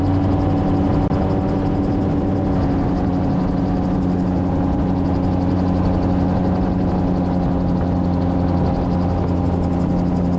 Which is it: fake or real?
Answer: real